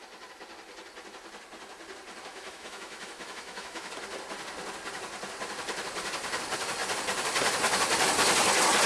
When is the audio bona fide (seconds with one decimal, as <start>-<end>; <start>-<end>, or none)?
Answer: 0.0-2.3; 3.9-8.9